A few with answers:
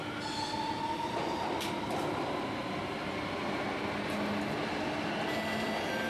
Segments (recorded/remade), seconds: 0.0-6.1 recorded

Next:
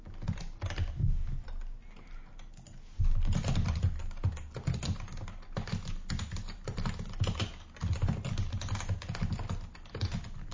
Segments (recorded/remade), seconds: 0.0-1.2 remade; 1.2-6.4 recorded; 6.4-7.5 remade; 7.5-9.2 recorded; 9.2-10.5 remade

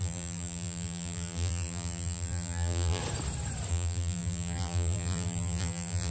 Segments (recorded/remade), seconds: 0.0-3.0 remade; 3.0-3.7 recorded; 3.7-6.1 remade

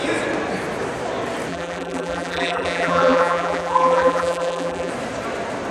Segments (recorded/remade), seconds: 0.0-1.5 recorded; 1.5-4.9 remade; 4.9-5.7 recorded